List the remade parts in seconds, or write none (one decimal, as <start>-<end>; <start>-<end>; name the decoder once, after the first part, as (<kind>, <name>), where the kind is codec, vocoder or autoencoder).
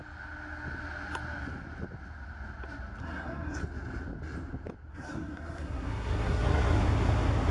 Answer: 3.0-3.6 (codec, SNAC); 4.9-6.8